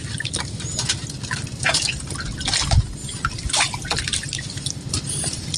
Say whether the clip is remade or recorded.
recorded